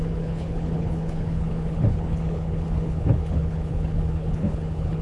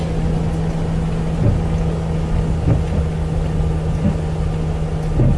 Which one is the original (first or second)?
second